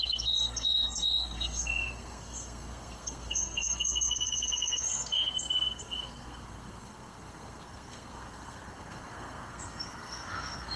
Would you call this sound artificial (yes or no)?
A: yes